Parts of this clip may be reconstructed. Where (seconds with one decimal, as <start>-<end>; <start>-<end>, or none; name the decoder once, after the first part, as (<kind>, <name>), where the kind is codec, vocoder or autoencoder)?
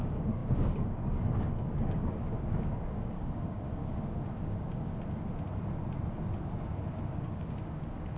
0.0-4.9 (codec, DAC); 7.2-8.2